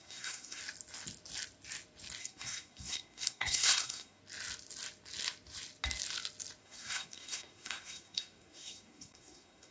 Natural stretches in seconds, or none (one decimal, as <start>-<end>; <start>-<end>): 0.6-2.2; 4.2-6.6